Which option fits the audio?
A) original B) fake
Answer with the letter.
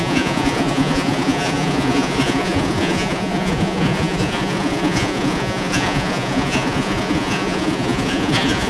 B